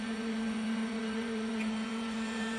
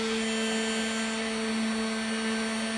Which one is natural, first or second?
second